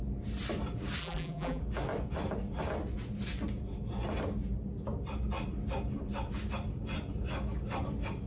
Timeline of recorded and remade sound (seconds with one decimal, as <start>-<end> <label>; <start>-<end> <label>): 0.0-1.0 recorded; 1.0-1.6 remade; 1.6-8.3 recorded